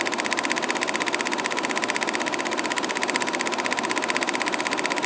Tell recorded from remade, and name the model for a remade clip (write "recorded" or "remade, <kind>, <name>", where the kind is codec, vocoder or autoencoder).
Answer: recorded